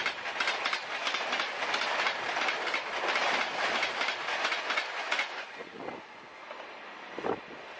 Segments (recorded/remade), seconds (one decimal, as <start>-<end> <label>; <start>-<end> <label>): 0.0-4.3 recorded; 4.3-6.4 remade; 6.4-7.8 recorded